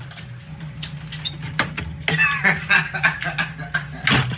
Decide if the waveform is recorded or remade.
recorded